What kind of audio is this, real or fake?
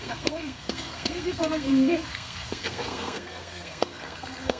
fake